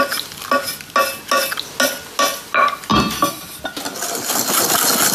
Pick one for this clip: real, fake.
real